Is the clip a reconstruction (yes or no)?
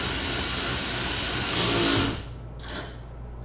no